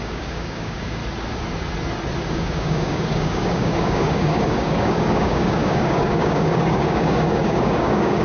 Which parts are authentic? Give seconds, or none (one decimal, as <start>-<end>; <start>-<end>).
1.0-2.3

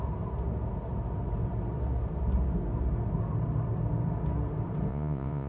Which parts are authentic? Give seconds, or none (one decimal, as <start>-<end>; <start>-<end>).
0.0-4.9